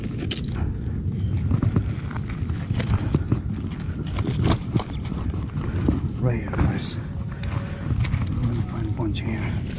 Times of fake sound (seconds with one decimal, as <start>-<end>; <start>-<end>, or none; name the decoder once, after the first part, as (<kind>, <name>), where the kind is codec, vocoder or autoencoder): 4.6-6.8 (vocoder, BigVGAN v2)